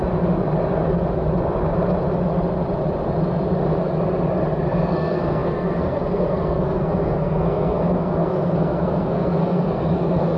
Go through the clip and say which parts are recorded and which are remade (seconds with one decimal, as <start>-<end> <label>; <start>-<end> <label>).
0.0-4.7 recorded; 4.7-10.4 remade